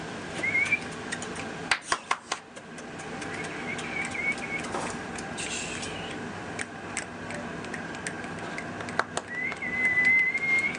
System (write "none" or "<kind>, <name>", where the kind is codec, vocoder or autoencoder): none